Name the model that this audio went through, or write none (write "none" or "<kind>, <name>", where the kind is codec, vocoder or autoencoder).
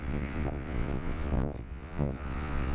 vocoder, Vocos